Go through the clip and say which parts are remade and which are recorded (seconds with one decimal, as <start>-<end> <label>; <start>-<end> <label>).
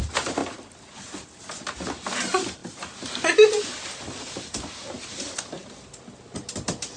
0.0-0.4 recorded; 0.4-1.4 remade; 1.4-7.0 recorded